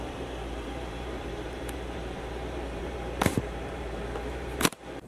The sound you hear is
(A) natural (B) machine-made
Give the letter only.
B